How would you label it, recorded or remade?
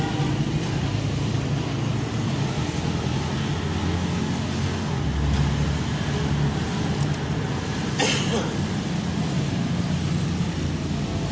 recorded